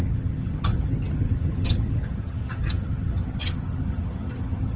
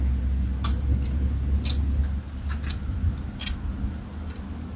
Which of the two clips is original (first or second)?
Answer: second